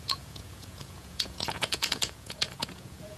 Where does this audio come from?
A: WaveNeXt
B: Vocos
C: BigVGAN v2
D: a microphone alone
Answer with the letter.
B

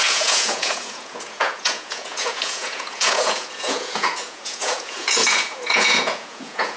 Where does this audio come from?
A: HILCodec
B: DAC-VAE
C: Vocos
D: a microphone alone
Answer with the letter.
C